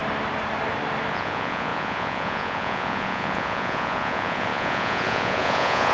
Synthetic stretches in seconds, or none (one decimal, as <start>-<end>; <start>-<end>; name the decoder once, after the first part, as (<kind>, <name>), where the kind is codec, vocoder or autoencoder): 1.1-5.9 (vocoder, Vocos)